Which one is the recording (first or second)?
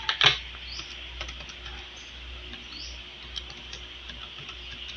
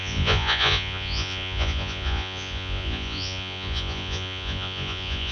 first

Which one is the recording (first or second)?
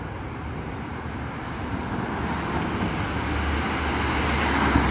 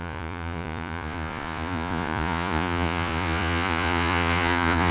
first